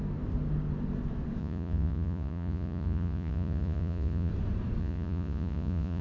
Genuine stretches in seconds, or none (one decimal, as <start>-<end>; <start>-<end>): 0.0-1.4; 4.3-4.8